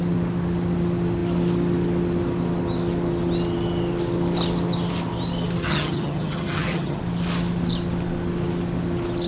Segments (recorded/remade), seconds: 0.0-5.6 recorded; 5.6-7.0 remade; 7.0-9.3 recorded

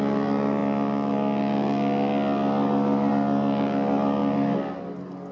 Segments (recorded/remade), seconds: 0.0-5.3 recorded

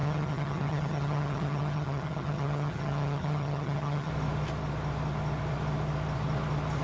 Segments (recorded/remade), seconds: 0.0-4.1 remade; 4.1-6.8 recorded